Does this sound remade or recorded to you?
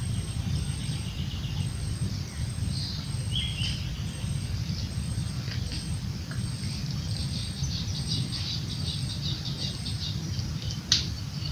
recorded